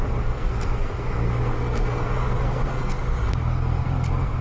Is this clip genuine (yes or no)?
no